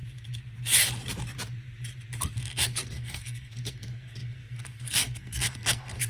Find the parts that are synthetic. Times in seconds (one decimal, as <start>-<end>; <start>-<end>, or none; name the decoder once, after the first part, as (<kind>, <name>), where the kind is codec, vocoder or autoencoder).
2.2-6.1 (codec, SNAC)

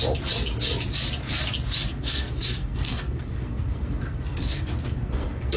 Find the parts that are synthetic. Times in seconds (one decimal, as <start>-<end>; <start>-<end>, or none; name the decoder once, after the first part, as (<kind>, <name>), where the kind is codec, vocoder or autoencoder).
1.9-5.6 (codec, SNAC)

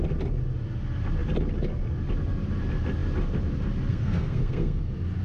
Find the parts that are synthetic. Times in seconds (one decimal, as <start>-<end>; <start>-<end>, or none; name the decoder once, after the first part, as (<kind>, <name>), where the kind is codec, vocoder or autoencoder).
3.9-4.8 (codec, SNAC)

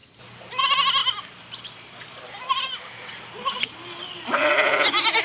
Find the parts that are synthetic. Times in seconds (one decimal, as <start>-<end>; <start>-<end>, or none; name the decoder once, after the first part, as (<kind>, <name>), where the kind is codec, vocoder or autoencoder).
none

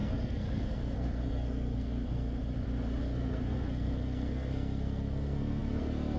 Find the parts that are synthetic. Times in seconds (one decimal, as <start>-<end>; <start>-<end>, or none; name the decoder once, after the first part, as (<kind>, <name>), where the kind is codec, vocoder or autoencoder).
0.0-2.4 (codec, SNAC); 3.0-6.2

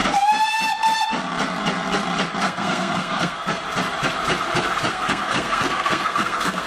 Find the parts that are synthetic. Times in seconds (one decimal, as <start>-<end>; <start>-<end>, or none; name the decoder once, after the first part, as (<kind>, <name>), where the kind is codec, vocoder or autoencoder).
2.4-3.6 (codec, SNAC); 4.9-6.7